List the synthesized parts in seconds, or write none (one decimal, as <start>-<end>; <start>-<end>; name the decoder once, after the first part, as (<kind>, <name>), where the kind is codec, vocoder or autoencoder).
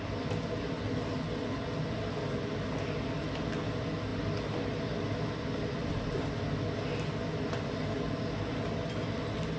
none